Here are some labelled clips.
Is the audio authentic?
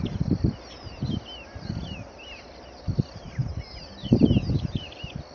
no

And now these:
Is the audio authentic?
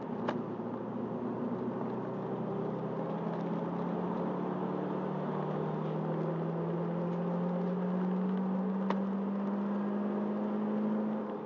yes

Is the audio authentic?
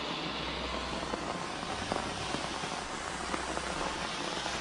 yes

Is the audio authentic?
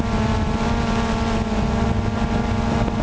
yes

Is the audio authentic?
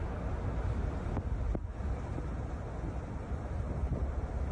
yes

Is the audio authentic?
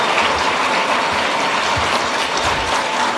yes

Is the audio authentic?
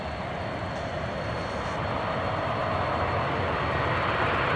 yes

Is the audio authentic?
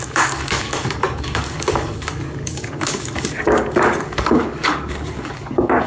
no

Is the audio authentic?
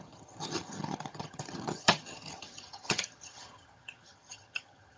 no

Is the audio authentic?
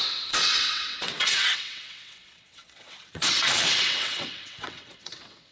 no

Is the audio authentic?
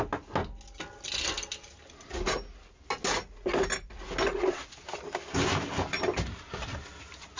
yes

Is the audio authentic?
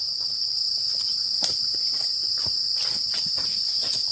yes